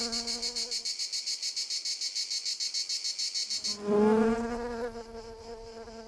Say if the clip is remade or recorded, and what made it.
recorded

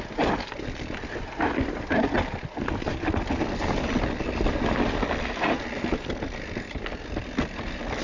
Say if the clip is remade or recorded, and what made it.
recorded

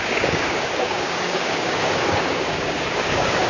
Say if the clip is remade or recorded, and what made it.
remade, codec, DAC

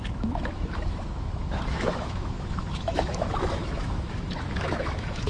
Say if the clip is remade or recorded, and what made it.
remade, autoencoder, DAC-VAE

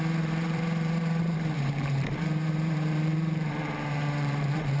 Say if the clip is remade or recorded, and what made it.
remade, vocoder, BigVGAN v2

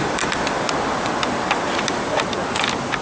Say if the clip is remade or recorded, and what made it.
recorded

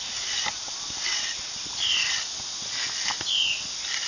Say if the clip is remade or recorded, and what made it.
recorded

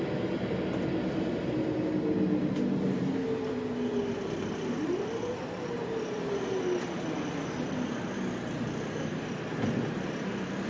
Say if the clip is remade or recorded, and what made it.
recorded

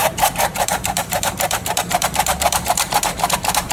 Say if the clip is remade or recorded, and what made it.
remade, vocoder, BigVGAN v2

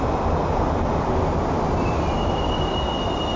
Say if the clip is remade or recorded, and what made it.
recorded